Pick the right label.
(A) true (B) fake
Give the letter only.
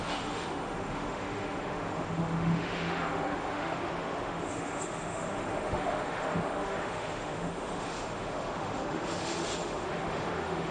B